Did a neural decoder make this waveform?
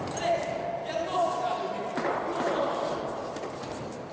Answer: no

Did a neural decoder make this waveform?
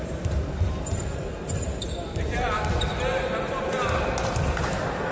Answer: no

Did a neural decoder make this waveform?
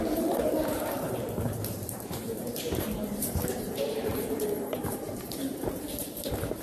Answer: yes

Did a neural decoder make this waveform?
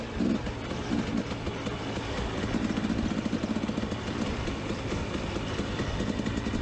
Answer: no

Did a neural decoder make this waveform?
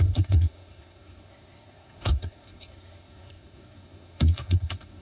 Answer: yes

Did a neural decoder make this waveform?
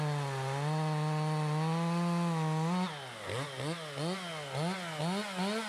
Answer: no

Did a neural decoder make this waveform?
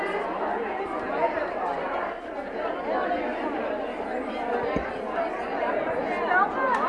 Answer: no